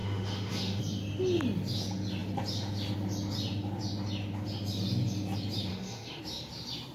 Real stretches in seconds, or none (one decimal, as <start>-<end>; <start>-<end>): 0.8-5.7; 6.2-6.9